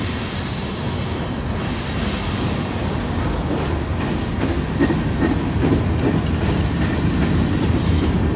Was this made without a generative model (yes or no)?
yes